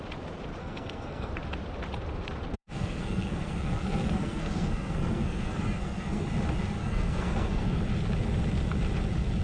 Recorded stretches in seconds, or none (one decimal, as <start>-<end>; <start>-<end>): 0.0-0.6; 1.3-2.6; 6.3-6.8; 7.8-9.4